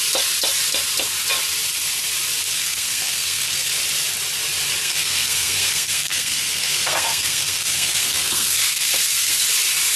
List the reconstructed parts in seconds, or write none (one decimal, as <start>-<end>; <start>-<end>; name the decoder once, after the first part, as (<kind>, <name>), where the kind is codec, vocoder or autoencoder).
2.5-3.7 (codec, SNAC); 4.8-9.4